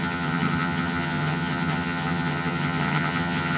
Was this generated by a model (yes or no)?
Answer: yes